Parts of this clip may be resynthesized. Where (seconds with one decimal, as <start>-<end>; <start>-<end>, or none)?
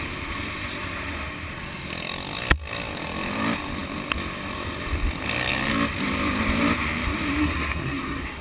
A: 7.4-8.4